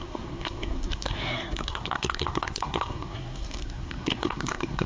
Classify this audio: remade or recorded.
remade